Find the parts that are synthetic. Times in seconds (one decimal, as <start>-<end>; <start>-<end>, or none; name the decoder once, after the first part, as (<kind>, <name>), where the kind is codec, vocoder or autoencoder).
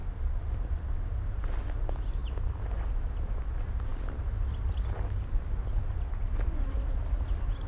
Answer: 0.0-0.5 (vocoder, BigVGAN v2); 2.2-2.8; 3.9-6.6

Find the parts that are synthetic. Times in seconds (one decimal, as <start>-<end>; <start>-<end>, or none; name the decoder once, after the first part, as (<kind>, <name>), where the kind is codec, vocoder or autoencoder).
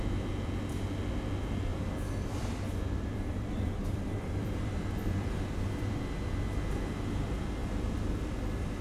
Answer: 1.7-6.0 (vocoder, BigVGAN v2); 7.6-8.8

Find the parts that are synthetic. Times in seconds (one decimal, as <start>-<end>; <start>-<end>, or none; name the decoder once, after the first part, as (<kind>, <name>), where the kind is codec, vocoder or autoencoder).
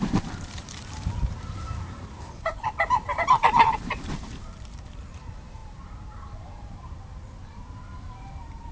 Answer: 0.0-5.6 (vocoder, BigVGAN v2); 6.1-8.7